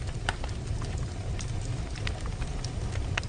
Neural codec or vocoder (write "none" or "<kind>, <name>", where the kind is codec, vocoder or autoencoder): none